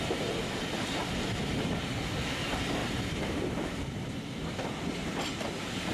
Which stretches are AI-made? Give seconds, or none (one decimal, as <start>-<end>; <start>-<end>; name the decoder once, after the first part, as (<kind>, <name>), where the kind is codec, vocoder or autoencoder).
2.8-4.1 (vocoder, BigVGAN v2)